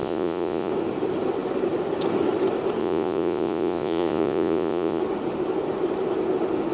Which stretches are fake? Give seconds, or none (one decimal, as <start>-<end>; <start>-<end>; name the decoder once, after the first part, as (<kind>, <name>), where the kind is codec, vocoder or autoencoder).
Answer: 0.0-0.7 (vocoder, Vocos); 2.8-5.0